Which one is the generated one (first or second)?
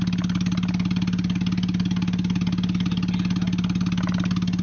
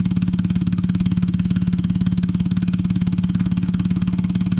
second